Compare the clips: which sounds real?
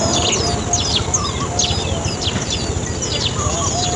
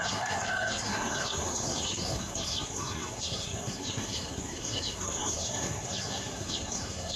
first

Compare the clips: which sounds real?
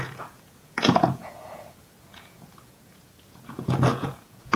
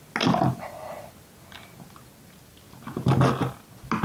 second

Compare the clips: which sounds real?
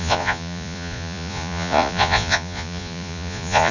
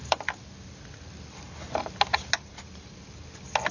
second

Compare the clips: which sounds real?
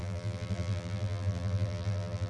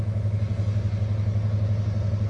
second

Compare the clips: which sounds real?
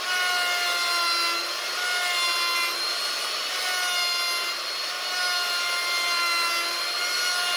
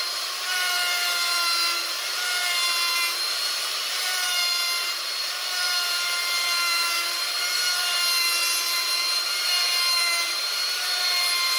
first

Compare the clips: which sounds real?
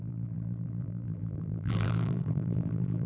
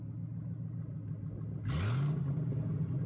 second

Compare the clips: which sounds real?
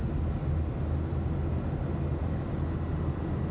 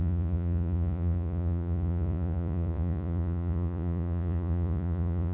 first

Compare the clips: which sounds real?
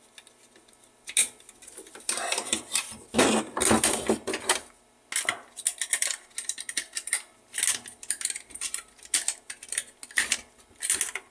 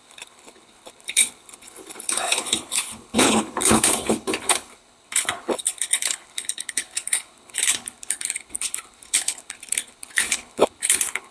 first